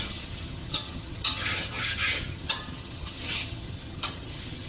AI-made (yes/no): yes